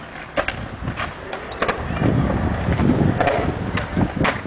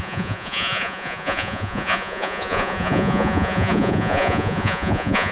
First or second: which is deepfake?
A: second